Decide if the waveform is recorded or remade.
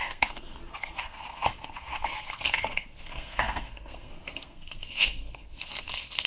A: remade